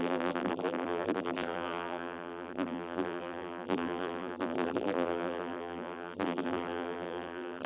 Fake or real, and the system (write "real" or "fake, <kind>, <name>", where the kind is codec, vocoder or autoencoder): fake, vocoder, BigVGAN v2